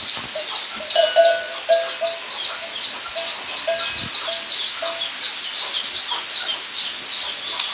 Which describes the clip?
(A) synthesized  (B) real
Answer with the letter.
B